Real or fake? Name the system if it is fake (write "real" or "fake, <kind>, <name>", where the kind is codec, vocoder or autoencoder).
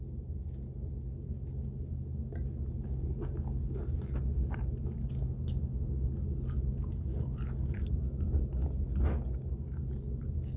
real